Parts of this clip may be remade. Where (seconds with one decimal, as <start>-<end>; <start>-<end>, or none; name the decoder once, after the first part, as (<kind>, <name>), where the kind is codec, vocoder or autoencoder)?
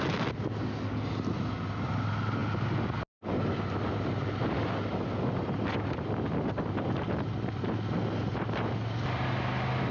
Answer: none